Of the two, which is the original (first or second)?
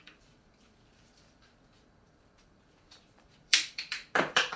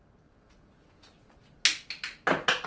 second